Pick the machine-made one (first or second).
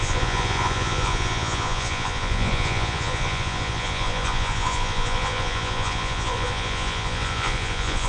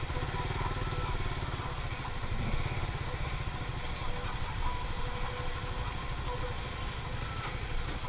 first